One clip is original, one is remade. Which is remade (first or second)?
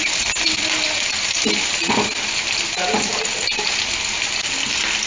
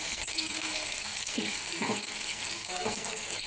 second